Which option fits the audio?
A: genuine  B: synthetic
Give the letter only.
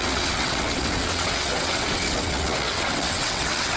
B